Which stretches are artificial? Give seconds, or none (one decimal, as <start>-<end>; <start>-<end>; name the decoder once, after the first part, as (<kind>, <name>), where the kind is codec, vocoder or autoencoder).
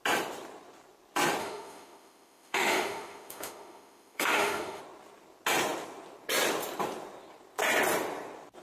1.4-4.8 (autoencoder, DAC-VAE)